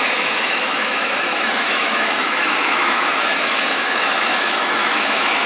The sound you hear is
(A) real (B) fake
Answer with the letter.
B